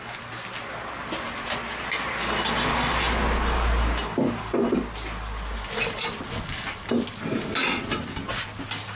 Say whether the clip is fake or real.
real